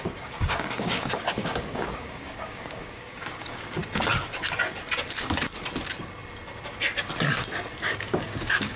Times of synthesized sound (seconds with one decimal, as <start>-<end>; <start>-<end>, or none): 0.0-3.8; 7.8-8.8